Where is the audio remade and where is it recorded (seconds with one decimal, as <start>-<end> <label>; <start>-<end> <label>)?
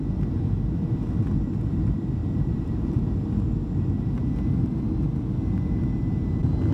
0.0-2.2 recorded; 2.2-3.0 remade; 3.0-6.7 recorded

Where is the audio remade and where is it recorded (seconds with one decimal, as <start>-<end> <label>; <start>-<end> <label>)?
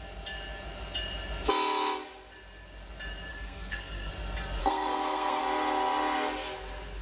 0.0-3.3 recorded; 3.3-4.1 remade; 4.1-4.6 recorded; 4.6-5.4 remade; 5.4-7.0 recorded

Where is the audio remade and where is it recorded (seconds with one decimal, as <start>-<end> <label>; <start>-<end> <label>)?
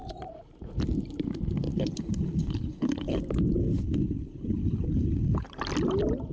0.0-1.7 recorded; 1.7-3.2 remade; 3.2-3.6 recorded; 3.6-5.6 remade; 5.6-6.3 recorded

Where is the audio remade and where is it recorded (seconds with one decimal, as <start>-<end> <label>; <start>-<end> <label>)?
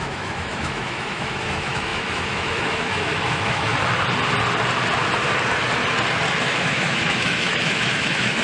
0.0-3.7 remade; 3.7-6.4 recorded; 6.4-8.4 remade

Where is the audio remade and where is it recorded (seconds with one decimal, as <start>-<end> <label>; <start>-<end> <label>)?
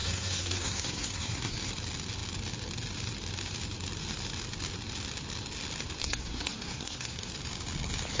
0.0-1.5 remade; 1.5-6.0 recorded; 6.0-7.3 remade; 7.3-8.2 recorded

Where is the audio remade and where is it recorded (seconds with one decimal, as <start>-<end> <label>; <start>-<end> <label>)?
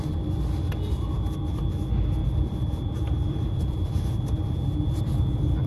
0.0-2.2 recorded; 2.2-5.7 remade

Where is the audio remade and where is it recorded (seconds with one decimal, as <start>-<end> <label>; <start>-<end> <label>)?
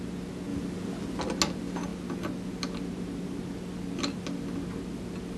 0.0-5.4 recorded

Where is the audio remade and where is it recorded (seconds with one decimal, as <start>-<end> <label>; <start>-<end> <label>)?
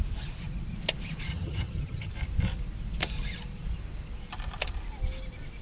0.0-1.3 recorded; 1.3-2.1 remade; 2.1-5.6 recorded